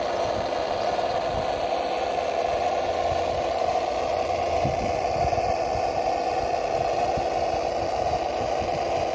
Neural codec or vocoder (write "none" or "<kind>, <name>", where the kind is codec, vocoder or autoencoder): none